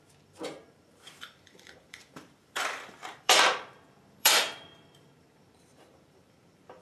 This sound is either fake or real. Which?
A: fake